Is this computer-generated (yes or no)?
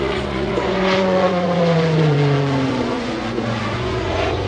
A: yes